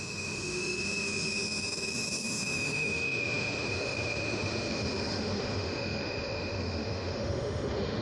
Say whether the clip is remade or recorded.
remade